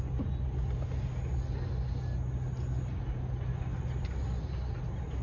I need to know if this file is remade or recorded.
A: recorded